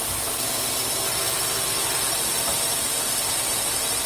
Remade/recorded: recorded